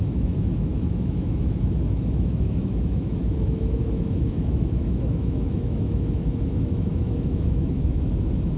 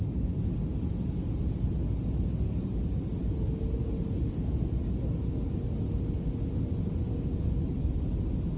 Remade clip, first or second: first